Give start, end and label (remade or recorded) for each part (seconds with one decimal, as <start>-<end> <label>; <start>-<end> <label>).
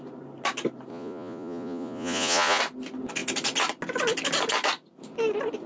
0.0-0.9 recorded; 0.9-2.6 remade; 2.6-5.7 recorded